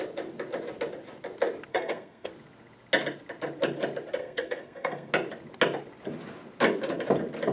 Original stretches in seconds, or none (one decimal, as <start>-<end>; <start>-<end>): 0.0-1.7; 2.3-4.2; 5.1-7.5